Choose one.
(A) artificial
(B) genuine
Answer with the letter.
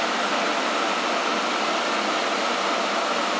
B